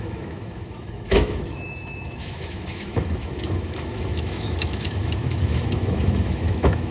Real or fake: fake